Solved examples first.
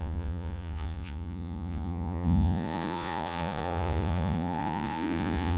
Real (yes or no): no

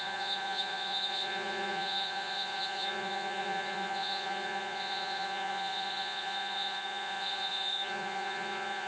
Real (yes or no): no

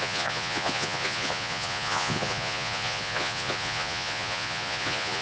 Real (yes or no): no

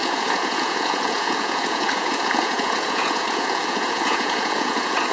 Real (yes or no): no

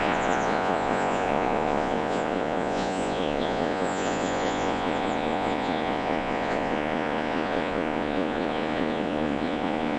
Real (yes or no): no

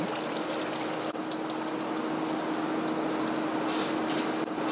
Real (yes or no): yes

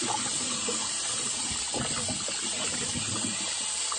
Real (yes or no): yes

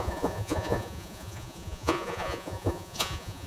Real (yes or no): no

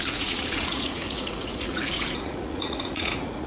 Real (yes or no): no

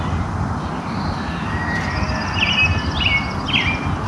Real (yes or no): yes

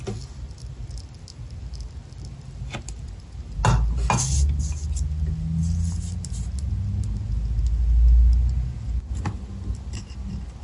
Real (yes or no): yes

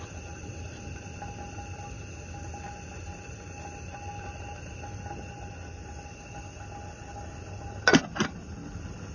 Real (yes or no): yes